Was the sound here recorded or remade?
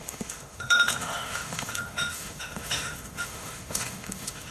remade